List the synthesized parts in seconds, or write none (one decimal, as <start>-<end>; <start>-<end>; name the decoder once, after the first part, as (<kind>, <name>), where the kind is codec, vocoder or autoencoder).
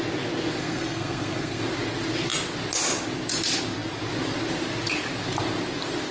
0.6-1.6 (codec, SNAC)